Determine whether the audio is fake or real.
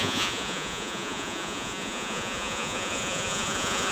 fake